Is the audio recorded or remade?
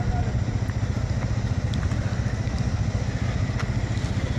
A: recorded